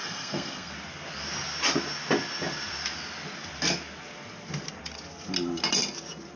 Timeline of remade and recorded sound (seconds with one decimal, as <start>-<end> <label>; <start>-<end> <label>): 0.0-0.7 remade; 0.7-6.4 recorded

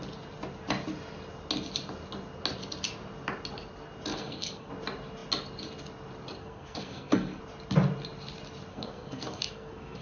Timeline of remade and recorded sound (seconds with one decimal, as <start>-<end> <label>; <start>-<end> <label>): 0.0-4.1 recorded; 4.1-4.7 remade; 4.7-6.4 recorded; 6.4-7.4 remade; 7.4-8.7 recorded; 8.7-10.0 remade

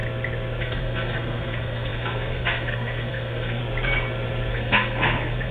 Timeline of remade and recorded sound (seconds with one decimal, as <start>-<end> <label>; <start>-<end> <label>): 0.0-0.6 recorded; 0.6-3.6 remade; 3.6-4.5 recorded; 4.5-5.5 remade

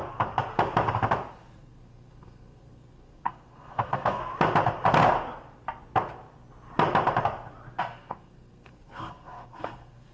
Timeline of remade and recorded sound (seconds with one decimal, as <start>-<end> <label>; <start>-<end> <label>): 0.0-1.3 recorded; 1.3-4.2 remade; 4.2-7.8 recorded; 7.8-10.1 remade

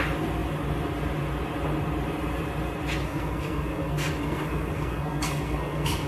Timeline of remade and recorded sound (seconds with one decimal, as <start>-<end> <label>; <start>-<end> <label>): 0.0-3.0 recorded; 3.0-6.1 remade

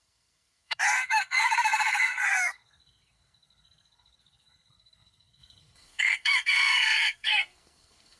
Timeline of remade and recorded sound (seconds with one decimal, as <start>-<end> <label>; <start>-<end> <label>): 0.0-8.2 remade